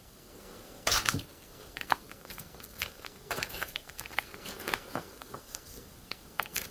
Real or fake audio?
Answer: fake